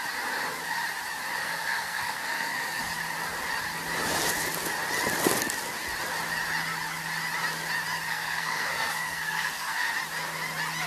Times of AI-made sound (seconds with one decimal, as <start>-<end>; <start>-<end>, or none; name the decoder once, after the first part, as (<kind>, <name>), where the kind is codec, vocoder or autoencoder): 1.4-2.9 (codec, SNAC); 8.1-9.9